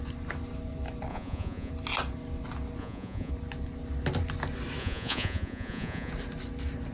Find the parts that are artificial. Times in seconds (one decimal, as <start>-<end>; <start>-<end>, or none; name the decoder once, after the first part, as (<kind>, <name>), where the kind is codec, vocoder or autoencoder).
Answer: 1.1-1.7 (vocoder, Vocos); 2.8-3.3; 4.8-6.1